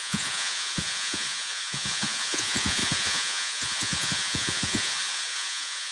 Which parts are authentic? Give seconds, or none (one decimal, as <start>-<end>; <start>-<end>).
none